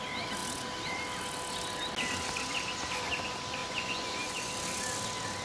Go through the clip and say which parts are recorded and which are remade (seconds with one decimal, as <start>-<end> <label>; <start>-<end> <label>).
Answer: 0.0-3.6 recorded; 3.6-4.5 remade; 4.5-5.4 recorded